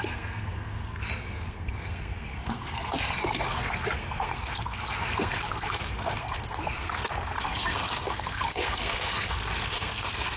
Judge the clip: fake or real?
fake